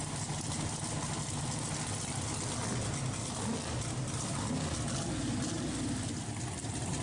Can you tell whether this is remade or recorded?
recorded